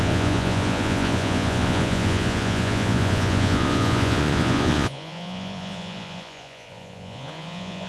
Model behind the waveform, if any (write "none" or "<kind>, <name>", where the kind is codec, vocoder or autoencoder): vocoder, Vocos